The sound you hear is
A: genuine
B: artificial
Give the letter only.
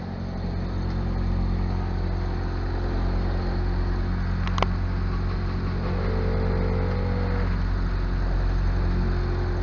A